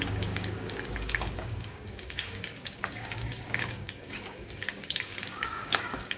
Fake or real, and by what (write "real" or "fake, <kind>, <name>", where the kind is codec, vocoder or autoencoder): fake, codec, DAC